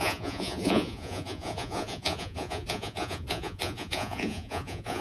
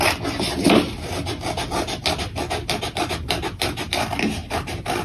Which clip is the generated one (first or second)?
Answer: first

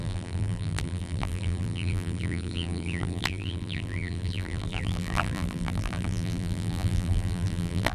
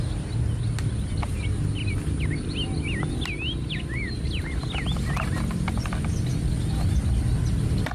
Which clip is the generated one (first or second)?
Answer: first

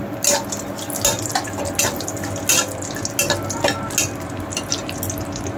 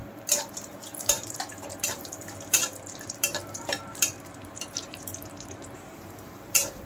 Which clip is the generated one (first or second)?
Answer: second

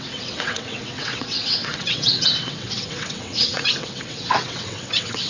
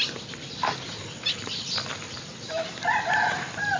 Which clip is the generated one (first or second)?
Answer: first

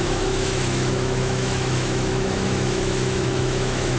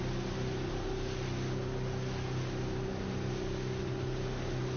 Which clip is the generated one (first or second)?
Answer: first